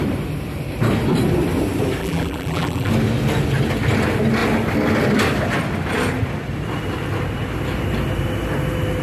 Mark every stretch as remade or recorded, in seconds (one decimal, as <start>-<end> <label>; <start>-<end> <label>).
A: 0.0-2.0 recorded; 2.0-2.9 remade; 2.9-9.0 recorded